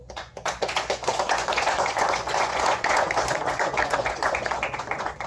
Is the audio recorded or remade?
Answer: remade